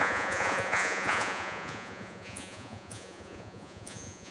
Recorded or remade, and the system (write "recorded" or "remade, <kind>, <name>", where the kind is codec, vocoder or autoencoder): remade, vocoder, Vocos